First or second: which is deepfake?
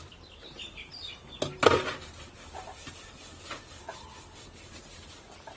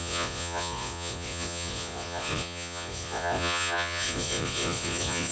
second